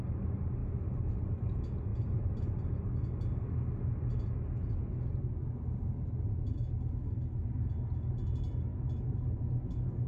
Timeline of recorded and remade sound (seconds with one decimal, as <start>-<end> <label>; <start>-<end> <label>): 0.0-0.6 recorded; 0.6-1.2 remade; 1.2-1.9 recorded; 1.9-2.8 remade; 2.8-10.1 recorded